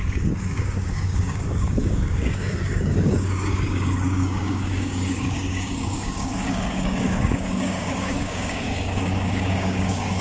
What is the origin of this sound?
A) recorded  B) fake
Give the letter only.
B